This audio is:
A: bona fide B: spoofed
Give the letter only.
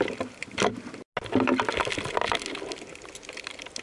A